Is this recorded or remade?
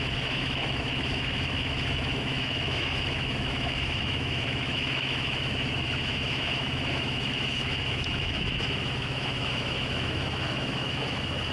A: remade